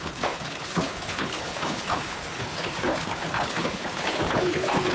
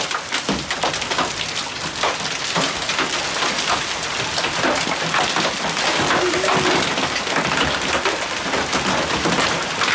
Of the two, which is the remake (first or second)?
first